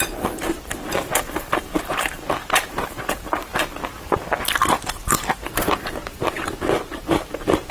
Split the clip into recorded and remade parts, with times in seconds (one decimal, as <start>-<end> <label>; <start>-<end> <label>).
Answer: 0.0-2.4 recorded; 2.4-3.0 remade; 3.0-7.7 recorded